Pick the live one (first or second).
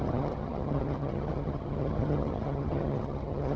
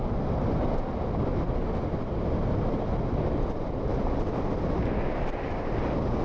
second